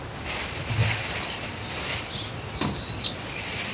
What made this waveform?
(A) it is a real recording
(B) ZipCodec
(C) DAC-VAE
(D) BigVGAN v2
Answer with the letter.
A